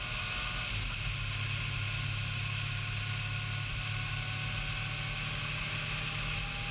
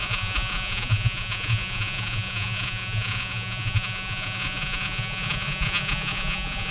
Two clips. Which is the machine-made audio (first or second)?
second